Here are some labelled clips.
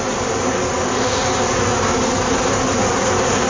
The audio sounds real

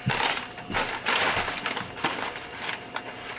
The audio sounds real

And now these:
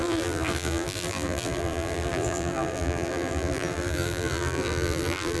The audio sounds fake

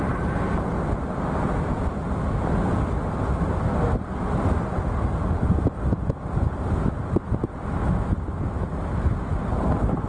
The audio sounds real